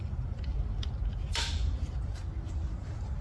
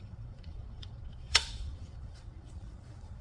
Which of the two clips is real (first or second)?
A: first